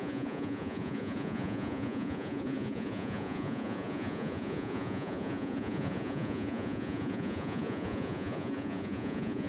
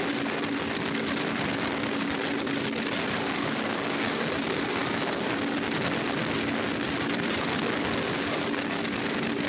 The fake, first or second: first